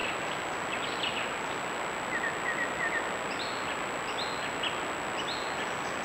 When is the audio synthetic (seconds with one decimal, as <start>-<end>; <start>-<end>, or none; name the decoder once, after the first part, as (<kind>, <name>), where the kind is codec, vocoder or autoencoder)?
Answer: none